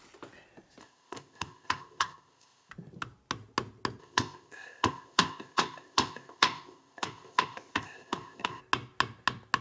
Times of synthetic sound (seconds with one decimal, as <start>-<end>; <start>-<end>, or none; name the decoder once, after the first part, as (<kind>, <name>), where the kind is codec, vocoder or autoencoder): 0.8-2.7 (codec, ZipCodec); 4.0-8.6